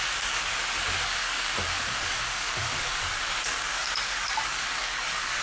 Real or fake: fake